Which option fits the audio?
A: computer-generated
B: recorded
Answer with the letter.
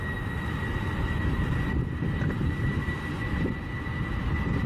B